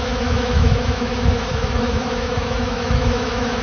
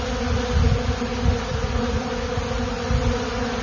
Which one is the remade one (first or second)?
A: first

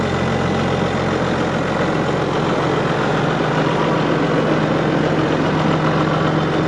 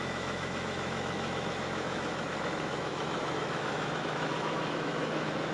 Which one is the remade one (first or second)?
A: second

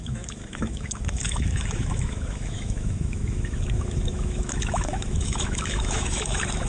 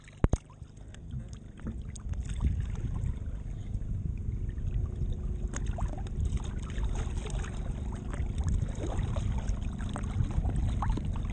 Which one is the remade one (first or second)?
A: first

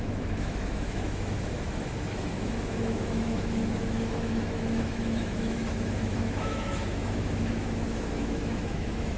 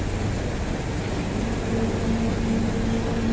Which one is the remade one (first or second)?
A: first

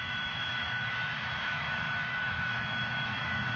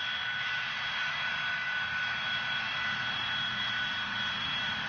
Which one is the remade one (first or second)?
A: first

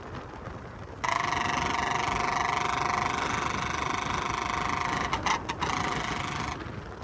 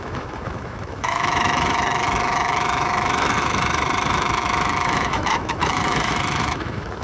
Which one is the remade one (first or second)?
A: second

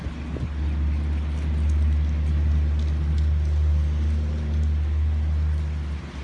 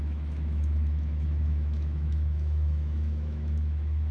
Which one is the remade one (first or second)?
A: second